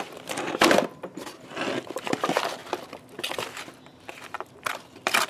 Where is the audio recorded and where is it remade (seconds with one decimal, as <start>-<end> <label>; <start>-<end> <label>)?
0.0-2.6 remade; 2.6-3.3 recorded; 3.3-5.3 remade